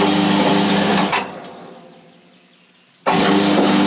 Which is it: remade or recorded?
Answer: remade